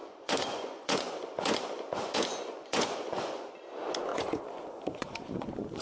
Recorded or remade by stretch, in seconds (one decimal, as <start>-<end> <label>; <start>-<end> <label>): 0.0-3.5 remade; 3.5-4.1 recorded; 4.1-5.8 remade